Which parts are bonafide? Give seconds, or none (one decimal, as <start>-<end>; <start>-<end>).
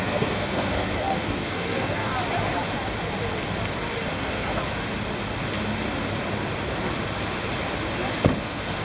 2.1-4.1; 4.6-8.4